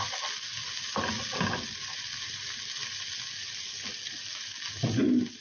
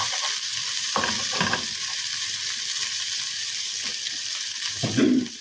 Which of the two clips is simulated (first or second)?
second